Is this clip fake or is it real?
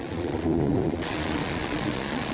fake